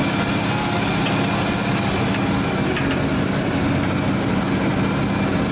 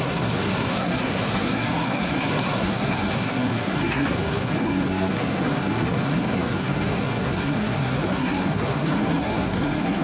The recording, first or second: first